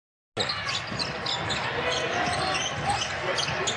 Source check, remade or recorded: recorded